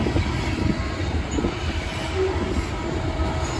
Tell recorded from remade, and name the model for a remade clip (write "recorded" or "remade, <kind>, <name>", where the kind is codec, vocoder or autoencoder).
recorded